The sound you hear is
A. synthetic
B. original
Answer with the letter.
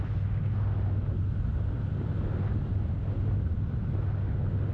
B